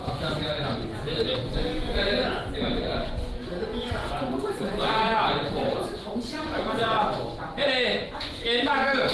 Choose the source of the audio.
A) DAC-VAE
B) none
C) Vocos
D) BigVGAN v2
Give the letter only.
C